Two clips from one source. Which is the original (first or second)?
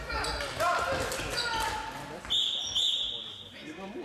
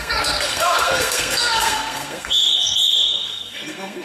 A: first